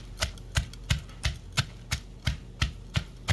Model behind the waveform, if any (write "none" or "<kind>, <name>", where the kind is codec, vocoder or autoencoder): none